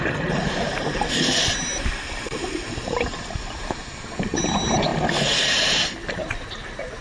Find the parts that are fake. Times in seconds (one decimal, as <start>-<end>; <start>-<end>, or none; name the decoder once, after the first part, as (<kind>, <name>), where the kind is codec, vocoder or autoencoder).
0.0-1.7 (vocoder, BigVGAN v2); 2.7-4.9; 5.5-7.0

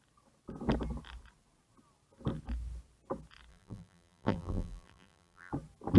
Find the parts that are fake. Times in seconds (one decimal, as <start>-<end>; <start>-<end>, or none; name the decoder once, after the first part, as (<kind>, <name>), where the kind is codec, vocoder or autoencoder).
3.5-5.5 (vocoder, BigVGAN v2)

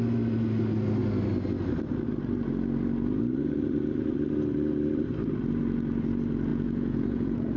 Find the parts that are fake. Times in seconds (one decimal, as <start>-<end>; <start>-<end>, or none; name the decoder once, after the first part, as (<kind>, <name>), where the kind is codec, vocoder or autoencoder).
6.5-7.6 (vocoder, Vocos)

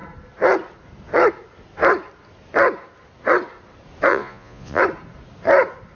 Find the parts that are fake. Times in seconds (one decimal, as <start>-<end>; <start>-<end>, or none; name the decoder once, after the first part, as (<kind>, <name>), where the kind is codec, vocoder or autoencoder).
4.1-4.8 (vocoder, Vocos)

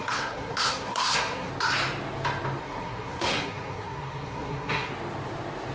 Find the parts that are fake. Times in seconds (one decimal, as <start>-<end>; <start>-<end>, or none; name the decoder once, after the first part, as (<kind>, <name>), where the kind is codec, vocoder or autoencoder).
0.0-1.5 (codec, SNAC); 2.6-4.9

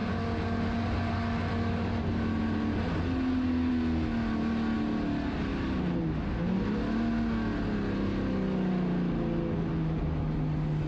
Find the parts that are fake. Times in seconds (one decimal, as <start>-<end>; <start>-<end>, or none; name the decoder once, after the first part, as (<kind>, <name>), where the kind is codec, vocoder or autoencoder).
none